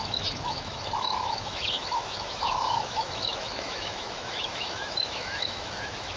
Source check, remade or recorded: remade